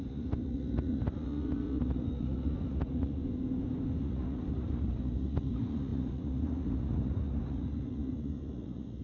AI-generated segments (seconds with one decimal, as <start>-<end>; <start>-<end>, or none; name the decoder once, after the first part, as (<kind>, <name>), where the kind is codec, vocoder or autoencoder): 0.0-3.2 (vocoder, Vocos); 4.0-9.0